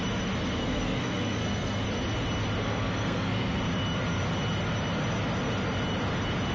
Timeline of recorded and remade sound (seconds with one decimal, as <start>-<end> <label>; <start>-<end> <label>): 0.0-0.6 recorded; 0.6-1.8 remade; 1.8-2.6 recorded; 2.6-3.6 remade; 3.6-6.5 recorded